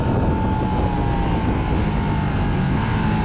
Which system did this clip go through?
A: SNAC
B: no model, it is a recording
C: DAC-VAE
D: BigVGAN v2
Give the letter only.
B